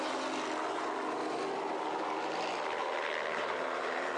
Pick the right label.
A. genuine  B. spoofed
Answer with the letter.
A